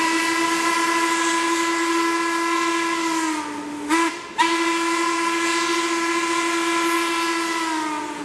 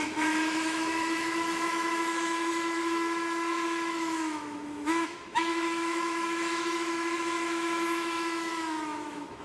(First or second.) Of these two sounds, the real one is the first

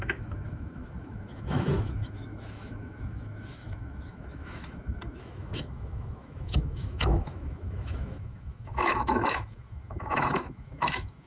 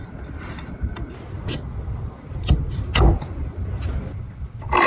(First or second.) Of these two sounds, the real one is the second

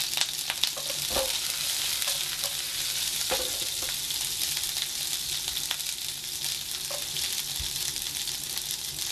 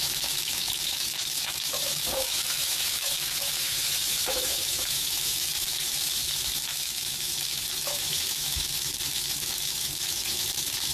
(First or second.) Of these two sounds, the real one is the first